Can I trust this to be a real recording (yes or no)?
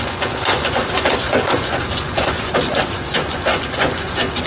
no